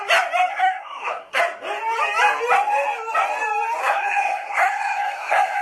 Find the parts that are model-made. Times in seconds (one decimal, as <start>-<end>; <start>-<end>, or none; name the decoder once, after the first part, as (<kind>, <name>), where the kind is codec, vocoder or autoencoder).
0.5-1.4 (codec, SNAC); 3.8-5.6